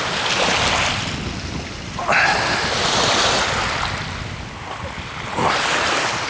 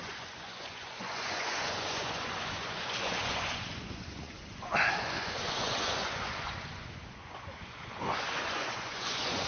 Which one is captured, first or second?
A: first